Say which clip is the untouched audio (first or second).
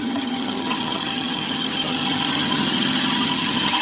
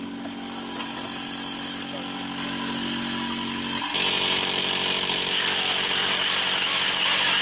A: second